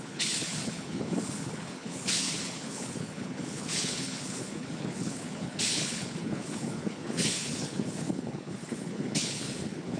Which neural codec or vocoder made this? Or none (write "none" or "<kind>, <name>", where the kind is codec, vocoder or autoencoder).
codec, HILCodec